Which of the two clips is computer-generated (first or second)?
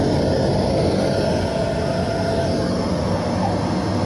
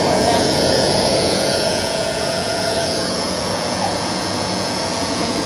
second